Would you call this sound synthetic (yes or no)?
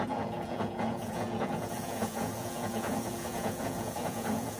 yes